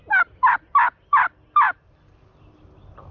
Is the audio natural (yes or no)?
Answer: yes